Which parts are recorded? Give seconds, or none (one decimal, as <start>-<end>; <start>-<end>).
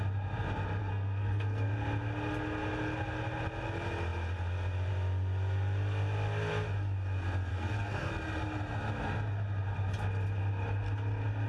0.0-0.8; 1.7-7.5; 8.1-11.5